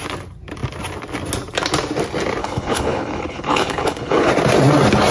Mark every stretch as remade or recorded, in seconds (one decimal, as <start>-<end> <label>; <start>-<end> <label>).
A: 0.0-2.4 recorded; 2.4-4.3 remade; 4.3-5.1 recorded